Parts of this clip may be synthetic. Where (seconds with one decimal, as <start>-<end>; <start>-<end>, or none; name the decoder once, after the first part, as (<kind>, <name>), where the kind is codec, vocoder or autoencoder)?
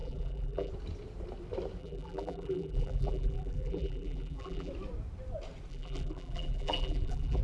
0.0-0.7 (vocoder, BigVGAN v2); 1.8-4.7; 5.7-7.4